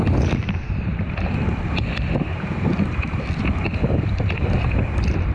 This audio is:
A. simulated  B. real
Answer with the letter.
B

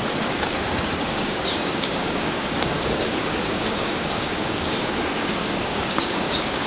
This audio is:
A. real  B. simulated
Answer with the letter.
B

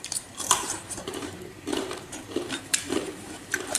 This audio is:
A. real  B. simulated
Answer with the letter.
B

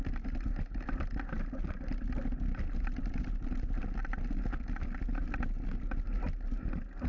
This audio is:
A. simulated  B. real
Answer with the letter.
B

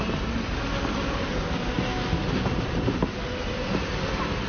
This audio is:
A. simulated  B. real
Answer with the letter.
B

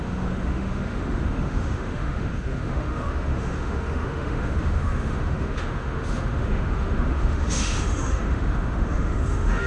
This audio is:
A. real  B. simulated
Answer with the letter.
B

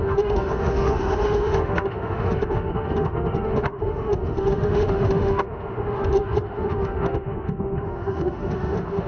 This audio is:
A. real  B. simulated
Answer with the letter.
B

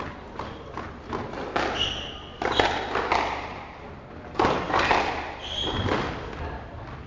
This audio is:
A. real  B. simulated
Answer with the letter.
A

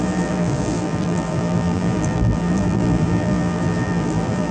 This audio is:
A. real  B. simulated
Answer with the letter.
B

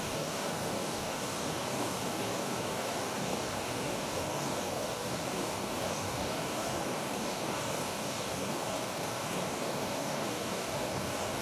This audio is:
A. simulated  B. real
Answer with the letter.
A